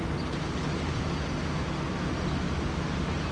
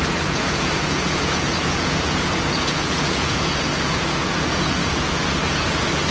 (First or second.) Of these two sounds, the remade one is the second